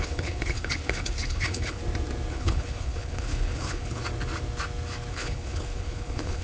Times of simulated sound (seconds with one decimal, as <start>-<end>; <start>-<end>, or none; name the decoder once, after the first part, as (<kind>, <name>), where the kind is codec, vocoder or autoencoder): 0.0-1.8 (codec, HILCodec); 2.3-4.0; 5.1-6.4